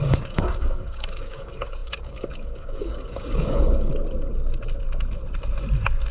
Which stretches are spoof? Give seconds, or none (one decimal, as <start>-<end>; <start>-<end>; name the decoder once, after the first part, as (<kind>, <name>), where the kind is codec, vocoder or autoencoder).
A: 0.0-3.9 (codec, DAC)